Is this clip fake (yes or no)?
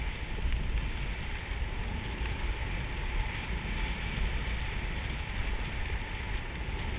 no